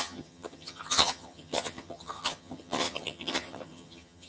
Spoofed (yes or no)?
yes